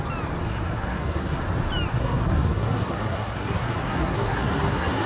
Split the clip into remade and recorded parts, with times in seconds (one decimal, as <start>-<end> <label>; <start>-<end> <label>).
0.0-0.5 recorded; 0.5-1.4 remade; 1.4-1.9 recorded; 1.9-5.1 remade